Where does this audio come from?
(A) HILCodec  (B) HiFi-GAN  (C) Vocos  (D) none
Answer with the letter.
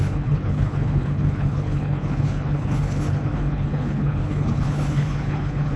A